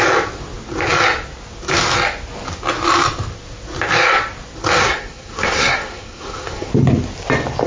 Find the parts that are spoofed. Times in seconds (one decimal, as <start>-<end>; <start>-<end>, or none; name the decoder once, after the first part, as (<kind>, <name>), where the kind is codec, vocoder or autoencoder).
4.8-6.7 (codec, SNAC)